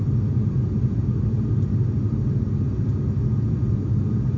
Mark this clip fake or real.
real